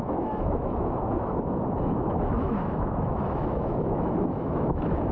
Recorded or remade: remade